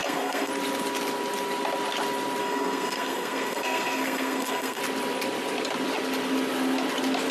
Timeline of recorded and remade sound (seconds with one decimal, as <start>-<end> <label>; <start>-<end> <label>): 0.0-0.5 remade; 0.5-2.4 recorded; 2.4-4.8 remade; 4.8-7.3 recorded